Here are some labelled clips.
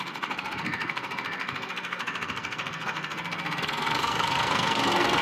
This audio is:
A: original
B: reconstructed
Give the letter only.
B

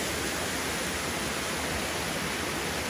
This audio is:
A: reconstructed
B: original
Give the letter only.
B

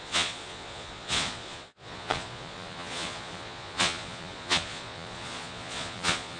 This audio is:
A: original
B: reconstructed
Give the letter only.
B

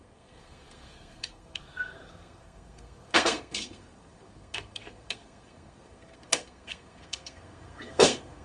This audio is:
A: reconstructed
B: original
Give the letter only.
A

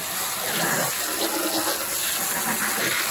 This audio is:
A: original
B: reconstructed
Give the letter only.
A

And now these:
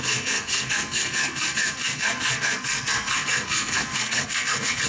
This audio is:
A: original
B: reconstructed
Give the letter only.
B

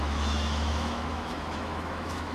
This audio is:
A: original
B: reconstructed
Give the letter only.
B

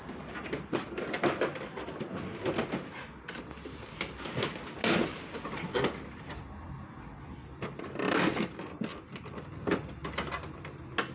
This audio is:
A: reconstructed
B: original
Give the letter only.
B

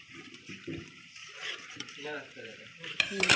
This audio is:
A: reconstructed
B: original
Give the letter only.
A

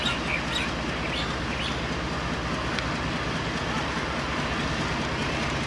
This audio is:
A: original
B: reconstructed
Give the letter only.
A